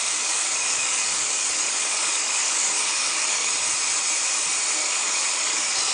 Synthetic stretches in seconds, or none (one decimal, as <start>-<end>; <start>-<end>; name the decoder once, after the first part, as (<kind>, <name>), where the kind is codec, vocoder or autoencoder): 0.0-3.5 (codec, DAC); 4.8-5.9